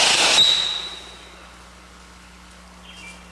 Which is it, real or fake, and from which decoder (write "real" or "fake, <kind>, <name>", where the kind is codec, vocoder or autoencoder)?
real